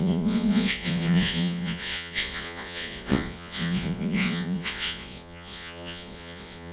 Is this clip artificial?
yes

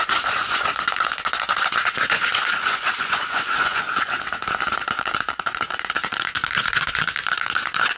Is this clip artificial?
yes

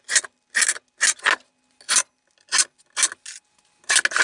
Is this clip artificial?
no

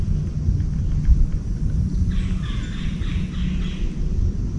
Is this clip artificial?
no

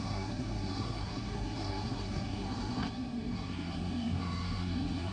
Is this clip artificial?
yes